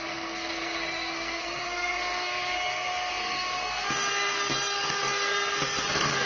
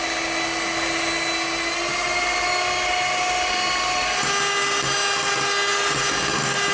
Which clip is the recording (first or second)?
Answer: second